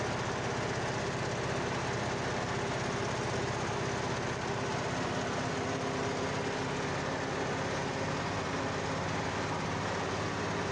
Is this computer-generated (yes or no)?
no